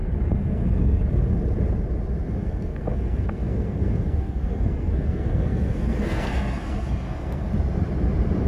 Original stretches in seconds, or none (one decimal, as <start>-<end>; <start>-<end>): 1.1-2.4; 7.5-8.5